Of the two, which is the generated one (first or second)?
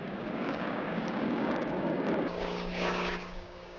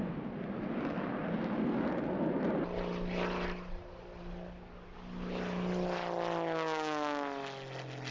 first